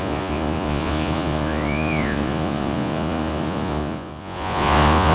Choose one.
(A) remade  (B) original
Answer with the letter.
A